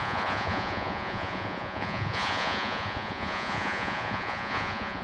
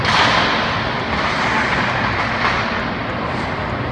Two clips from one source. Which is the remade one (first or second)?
first